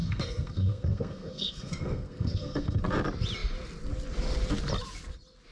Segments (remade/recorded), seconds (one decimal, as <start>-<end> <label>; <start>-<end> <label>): 0.0-2.8 remade; 2.8-5.5 recorded